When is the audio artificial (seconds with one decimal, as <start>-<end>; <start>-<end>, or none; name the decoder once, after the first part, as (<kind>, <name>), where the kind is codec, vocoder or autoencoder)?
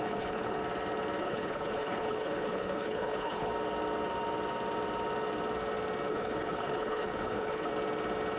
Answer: 0.0-0.6 (codec, HILCodec); 1.2-3.5; 6.1-7.7